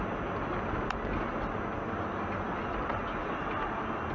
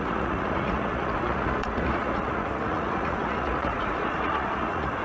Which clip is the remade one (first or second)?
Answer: second